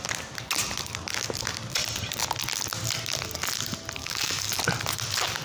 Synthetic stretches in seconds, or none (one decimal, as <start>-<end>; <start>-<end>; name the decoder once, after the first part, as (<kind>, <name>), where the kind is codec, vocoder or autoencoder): 4.0-4.6 (codec, DAC)